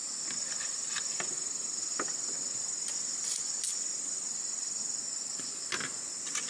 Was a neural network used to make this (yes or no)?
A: no